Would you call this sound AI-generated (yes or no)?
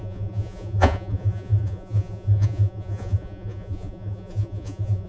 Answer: yes